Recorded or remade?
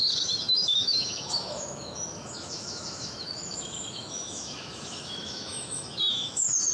remade